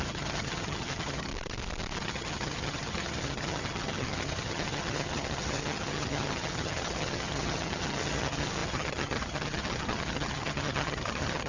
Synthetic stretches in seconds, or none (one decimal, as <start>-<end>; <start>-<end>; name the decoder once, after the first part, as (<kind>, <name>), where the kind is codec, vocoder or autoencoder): 0.0-1.3 (vocoder, HiFi-GAN); 2.0-11.5

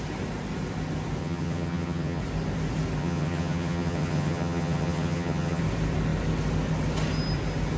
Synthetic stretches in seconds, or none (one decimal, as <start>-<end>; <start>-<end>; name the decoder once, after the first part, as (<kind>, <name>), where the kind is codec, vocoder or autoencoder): 1.2-2.2 (vocoder, HiFi-GAN); 3.0-5.6

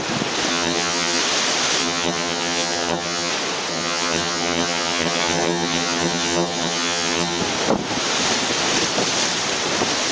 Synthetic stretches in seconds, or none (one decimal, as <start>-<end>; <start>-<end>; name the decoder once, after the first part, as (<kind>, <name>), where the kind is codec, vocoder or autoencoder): 0.5-1.2 (vocoder, HiFi-GAN); 1.8-3.3; 3.7-7.4

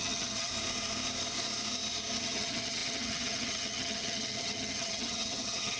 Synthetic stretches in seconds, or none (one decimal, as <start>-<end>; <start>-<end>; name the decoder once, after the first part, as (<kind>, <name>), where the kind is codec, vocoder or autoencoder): 0.0-0.5 (vocoder, HiFi-GAN); 2.2-5.8

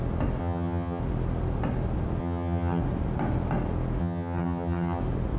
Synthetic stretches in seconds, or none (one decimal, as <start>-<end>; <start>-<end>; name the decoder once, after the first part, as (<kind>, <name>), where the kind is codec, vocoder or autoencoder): 0.4-1.0 (vocoder, HiFi-GAN); 2.2-2.8; 4.0-5.0

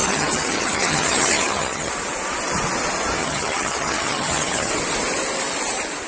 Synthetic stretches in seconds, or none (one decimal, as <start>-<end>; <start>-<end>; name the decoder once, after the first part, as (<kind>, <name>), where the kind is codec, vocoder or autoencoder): 0.0-1.9 (vocoder, HiFi-GAN); 3.2-4.7

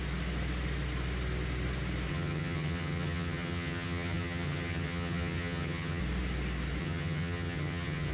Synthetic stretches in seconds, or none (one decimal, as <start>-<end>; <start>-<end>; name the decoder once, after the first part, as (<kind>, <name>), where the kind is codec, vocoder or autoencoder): 2.1-6.0 (vocoder, HiFi-GAN); 6.8-8.1

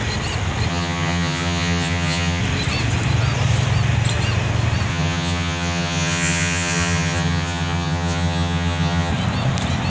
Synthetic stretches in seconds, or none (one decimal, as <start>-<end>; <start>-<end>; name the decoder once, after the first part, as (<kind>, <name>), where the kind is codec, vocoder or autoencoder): 0.7-2.4 (vocoder, HiFi-GAN); 4.9-9.1